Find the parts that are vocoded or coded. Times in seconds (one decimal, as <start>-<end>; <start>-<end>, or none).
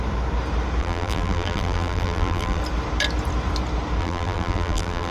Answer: 0.8-2.6; 4.0-5.1